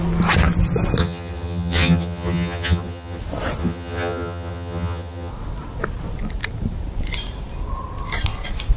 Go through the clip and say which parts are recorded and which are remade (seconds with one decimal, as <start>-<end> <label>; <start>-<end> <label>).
0.0-1.0 recorded; 1.0-3.2 remade; 3.2-3.6 recorded; 3.6-5.3 remade; 5.3-8.8 recorded

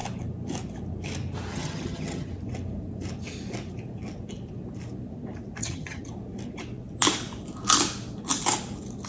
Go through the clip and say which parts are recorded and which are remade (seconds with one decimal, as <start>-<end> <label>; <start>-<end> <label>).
0.0-1.5 recorded; 1.5-2.3 remade; 2.3-5.6 recorded; 5.6-6.1 remade; 6.1-9.1 recorded

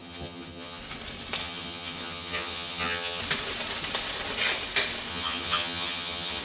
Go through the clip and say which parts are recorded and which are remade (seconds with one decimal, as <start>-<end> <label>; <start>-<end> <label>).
0.0-0.8 remade; 0.8-1.4 recorded; 1.4-3.2 remade; 3.2-5.1 recorded; 5.1-6.4 remade

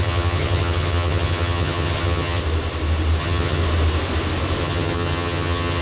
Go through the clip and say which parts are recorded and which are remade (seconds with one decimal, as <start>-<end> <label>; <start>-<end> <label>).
0.0-2.4 remade; 2.4-3.2 recorded; 3.2-3.6 remade; 3.6-4.6 recorded; 4.6-5.8 remade

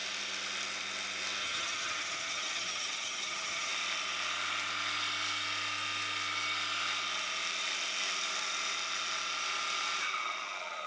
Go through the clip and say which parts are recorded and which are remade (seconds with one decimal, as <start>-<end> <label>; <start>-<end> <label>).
0.0-1.4 recorded; 1.4-3.7 remade; 3.7-10.9 recorded

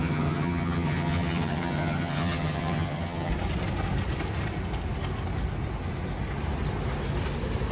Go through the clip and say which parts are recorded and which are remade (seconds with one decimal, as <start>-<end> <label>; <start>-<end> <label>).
0.0-3.3 remade; 3.3-7.7 recorded